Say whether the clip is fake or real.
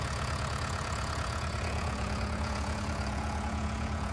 fake